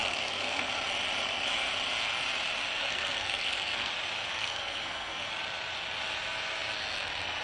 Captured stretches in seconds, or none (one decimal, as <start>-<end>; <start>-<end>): 0.7-2.8; 3.9-4.3; 5.3-7.4

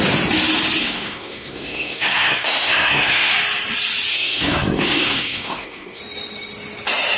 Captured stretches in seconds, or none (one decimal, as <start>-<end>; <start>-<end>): 0.0-0.8; 3.3-4.1; 6.0-7.2

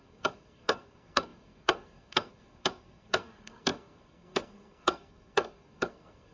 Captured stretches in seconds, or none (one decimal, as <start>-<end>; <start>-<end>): none

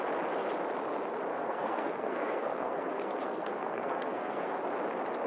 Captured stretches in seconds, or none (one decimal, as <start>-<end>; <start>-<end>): 0.0-1.3; 4.5-5.3